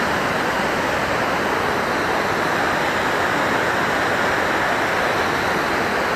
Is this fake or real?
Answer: real